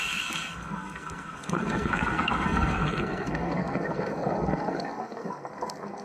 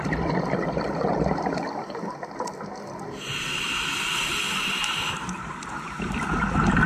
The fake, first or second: first